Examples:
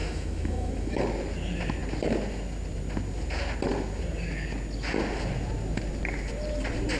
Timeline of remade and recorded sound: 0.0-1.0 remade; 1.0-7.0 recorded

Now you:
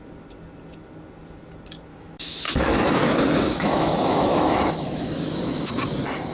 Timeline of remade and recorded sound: 0.0-1.9 recorded; 1.9-5.7 remade; 5.7-6.3 recorded